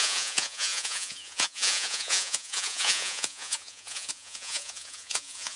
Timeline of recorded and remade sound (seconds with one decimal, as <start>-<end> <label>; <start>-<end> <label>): 0.0-5.6 remade